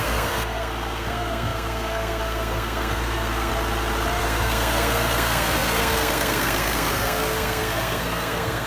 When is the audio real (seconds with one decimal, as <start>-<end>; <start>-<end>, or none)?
3.5-4.2